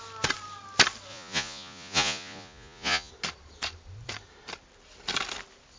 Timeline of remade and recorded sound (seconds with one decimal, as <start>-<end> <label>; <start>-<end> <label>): 0.0-1.1 recorded; 1.1-3.1 remade; 3.1-5.8 recorded